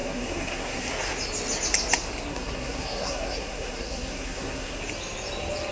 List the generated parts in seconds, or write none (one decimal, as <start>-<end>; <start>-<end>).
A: 0.0-0.9; 2.3-4.8